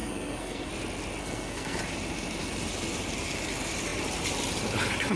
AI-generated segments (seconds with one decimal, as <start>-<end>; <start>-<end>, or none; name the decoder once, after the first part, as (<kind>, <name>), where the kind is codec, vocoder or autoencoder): 0.0-0.7 (codec, SNAC); 1.2-1.8